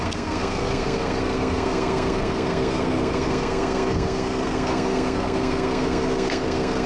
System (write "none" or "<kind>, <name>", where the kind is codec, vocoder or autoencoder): codec, SNAC